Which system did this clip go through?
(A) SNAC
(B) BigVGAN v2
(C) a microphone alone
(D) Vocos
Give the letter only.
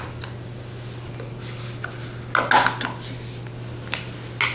C